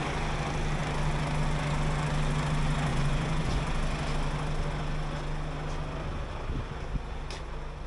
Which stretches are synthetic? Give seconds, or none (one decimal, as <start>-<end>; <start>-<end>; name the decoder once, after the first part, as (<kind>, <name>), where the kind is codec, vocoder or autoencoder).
2.9-3.6 (vocoder, Vocos)